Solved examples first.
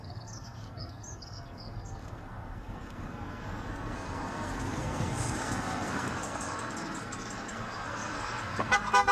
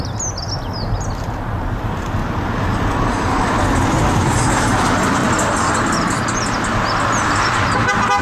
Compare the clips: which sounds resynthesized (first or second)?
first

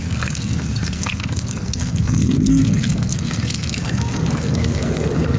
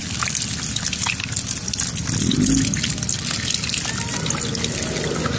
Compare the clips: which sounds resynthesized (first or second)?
first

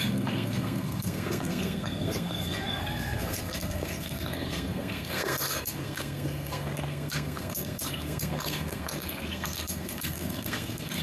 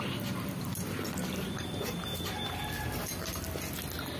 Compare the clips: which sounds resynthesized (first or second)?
first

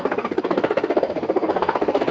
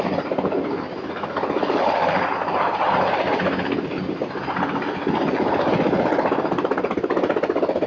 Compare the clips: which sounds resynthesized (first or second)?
first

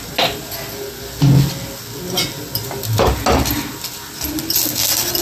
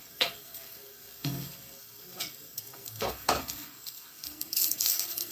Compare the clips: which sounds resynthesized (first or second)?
second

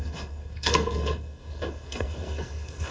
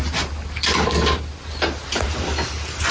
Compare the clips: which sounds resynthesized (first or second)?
first